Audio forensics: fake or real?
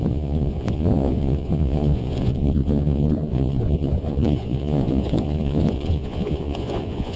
fake